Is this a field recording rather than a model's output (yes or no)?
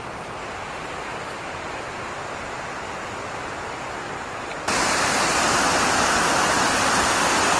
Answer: yes